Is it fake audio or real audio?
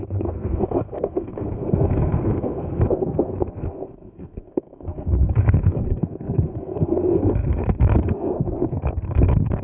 fake